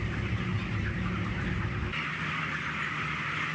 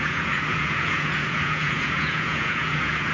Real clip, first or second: first